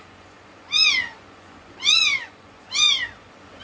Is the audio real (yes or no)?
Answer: no